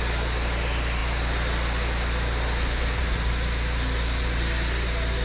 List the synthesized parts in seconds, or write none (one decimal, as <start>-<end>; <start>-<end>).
none